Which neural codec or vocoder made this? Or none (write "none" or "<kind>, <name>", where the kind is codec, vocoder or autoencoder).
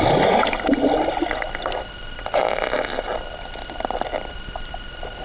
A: none